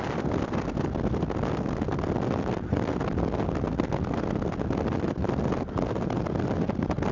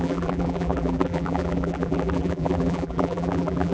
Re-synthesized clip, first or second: second